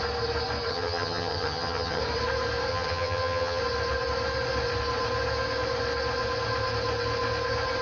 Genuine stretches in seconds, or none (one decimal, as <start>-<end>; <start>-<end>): 0.0-0.7; 2.0-2.7; 3.6-7.8